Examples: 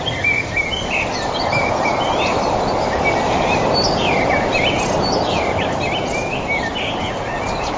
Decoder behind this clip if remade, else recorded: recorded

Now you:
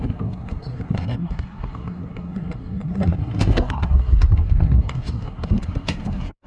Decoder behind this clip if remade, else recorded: remade, codec, SNAC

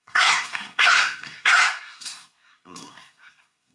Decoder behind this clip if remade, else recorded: remade, codec, SNAC